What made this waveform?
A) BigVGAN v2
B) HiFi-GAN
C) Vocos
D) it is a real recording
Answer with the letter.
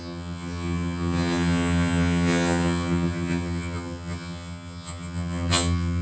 B